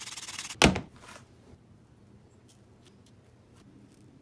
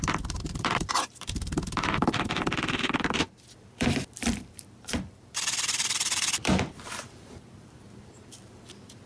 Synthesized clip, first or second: second